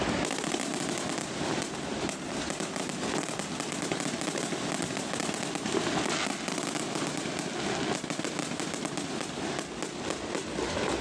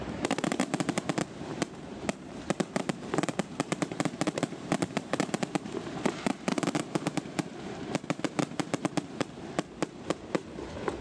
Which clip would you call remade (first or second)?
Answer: second